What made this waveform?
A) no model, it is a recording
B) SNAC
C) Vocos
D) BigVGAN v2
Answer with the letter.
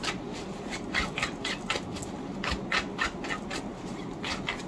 A